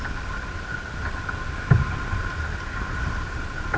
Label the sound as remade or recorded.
recorded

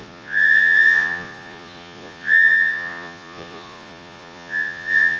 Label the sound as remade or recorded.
remade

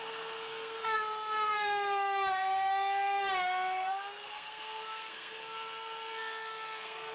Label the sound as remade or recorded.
remade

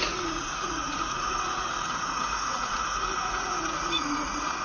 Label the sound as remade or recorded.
remade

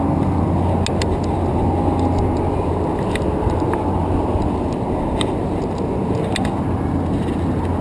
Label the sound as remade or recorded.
recorded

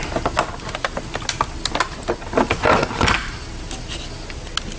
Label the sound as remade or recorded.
recorded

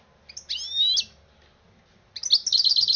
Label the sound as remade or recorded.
recorded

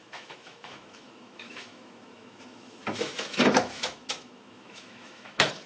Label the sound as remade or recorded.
remade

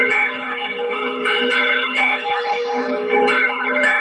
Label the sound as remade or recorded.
remade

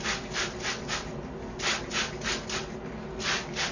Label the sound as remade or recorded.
recorded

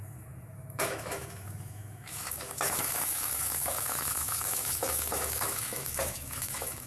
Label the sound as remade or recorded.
remade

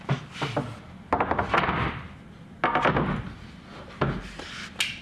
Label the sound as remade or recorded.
recorded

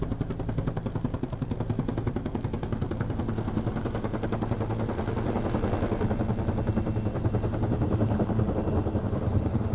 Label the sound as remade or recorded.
recorded